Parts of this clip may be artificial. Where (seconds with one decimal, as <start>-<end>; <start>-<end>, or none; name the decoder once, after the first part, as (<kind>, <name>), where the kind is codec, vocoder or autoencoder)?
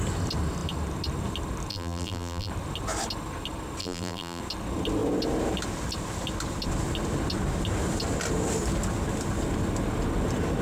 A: 1.7-2.5 (vocoder, BigVGAN v2); 3.8-4.4